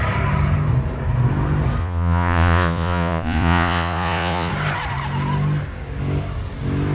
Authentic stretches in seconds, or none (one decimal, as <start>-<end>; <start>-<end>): 0.0-1.8; 4.5-6.9